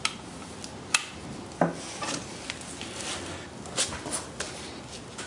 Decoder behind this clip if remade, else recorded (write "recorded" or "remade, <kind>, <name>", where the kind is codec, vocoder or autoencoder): recorded